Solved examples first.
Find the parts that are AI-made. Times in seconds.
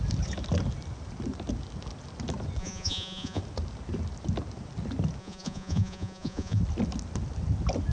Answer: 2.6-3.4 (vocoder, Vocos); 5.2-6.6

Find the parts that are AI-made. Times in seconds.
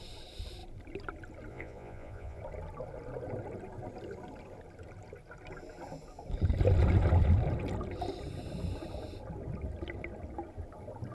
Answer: 1.5-2.4 (vocoder, Vocos)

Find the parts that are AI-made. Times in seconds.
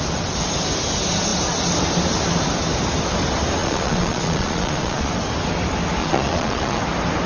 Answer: 3.6-5.1 (vocoder, Vocos); 6.0-6.8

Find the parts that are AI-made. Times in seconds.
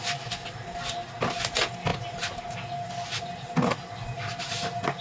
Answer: none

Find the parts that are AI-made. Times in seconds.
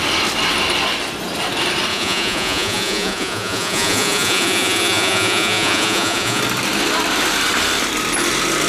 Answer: 1.9-6.4 (vocoder, Vocos)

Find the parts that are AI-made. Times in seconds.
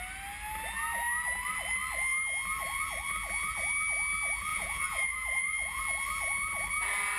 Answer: 4.5-5.8 (vocoder, Vocos)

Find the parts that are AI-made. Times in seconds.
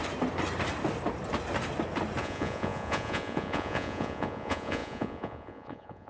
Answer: 2.2-6.1 (vocoder, Vocos)